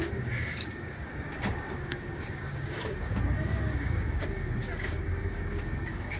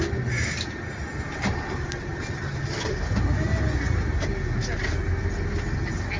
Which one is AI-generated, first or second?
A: first